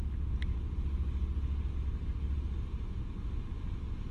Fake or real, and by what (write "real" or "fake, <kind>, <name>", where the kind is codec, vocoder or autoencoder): real